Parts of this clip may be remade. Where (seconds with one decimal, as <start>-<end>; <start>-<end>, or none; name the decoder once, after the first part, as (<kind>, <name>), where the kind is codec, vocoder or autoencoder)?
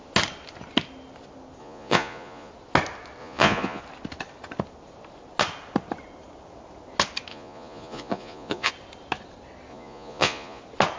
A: 1.6-2.5 (vocoder, Vocos); 3.2-3.8; 7.3-8.7; 9.7-10.6